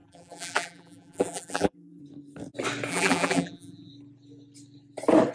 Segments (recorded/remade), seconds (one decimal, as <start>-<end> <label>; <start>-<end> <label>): 0.0-2.0 remade; 2.0-2.9 recorded; 2.9-3.9 remade; 3.9-5.3 recorded